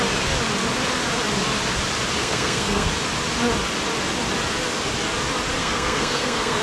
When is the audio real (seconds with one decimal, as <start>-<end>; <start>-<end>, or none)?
0.0-2.2; 2.9-5.6

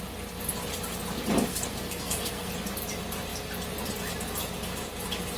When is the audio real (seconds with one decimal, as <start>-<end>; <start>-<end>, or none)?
0.0-1.5; 2.5-5.4

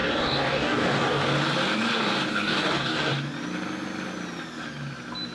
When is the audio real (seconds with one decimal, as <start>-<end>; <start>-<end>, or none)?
1.2-2.3; 3.1-5.3

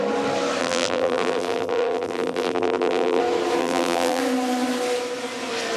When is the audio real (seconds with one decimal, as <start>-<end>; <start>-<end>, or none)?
0.0-0.6; 3.2-3.6; 4.2-5.8

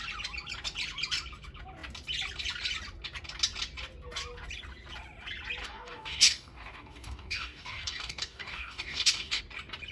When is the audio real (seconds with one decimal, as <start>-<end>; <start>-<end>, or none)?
0.0-5.6; 9.4-9.9